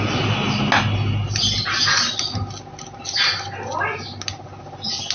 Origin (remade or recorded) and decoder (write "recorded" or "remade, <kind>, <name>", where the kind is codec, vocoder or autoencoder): recorded